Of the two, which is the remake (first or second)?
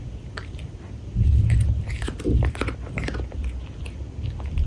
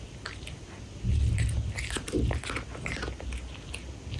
first